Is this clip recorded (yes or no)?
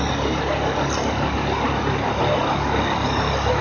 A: yes